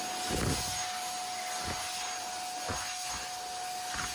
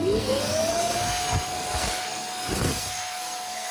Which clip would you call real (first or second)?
first